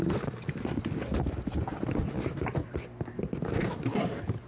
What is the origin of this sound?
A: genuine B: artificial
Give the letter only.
A